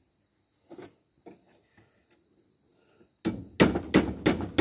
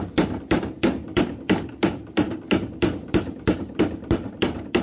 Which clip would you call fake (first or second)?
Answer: second